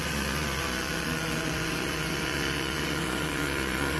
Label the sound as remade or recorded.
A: remade